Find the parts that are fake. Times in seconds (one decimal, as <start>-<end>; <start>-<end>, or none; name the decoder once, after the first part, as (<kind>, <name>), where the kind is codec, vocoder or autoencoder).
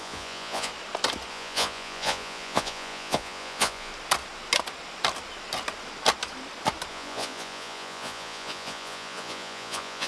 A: 0.0-0.7 (vocoder, Vocos); 1.3-3.9; 6.9-10.1